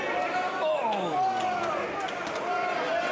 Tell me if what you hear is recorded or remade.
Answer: recorded